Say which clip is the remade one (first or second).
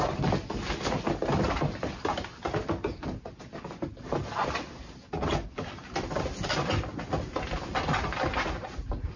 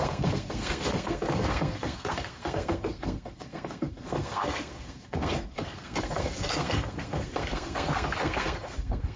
second